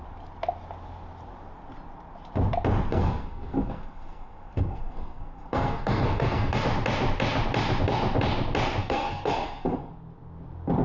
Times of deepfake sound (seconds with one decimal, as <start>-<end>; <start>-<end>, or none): 2.9-6.6; 8.8-9.9